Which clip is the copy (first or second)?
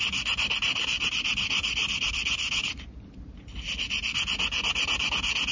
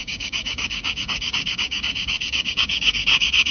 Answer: second